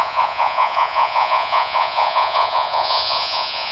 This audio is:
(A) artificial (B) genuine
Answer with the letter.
A